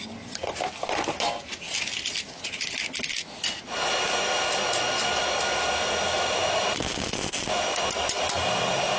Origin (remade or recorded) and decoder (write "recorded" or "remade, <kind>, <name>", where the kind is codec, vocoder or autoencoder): recorded